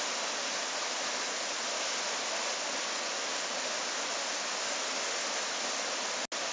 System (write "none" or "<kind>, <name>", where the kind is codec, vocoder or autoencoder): none